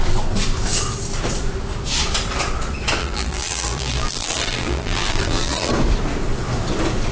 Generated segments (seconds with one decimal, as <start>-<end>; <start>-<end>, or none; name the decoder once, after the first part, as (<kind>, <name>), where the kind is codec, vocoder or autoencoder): 3.0-5.7 (vocoder, BigVGAN v2)